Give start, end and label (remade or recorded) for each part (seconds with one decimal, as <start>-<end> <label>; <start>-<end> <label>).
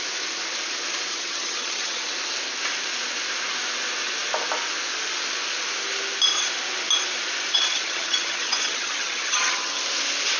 0.0-1.1 recorded; 1.1-2.1 remade; 2.1-7.5 recorded; 7.5-9.8 remade; 9.8-10.4 recorded